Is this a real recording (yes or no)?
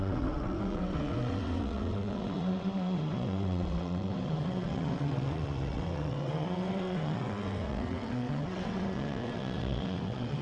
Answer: no